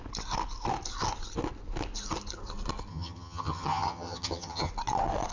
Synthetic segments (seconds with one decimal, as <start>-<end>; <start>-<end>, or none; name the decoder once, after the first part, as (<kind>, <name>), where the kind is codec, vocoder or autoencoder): 2.9-4.7 (vocoder, HiFi-GAN)